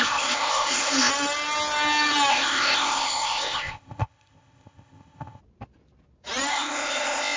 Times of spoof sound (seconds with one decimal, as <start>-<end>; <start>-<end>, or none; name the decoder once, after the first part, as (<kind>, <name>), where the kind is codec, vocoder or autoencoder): 0.0-1.1 (codec, ZipCodec); 2.3-5.4; 6.5-7.4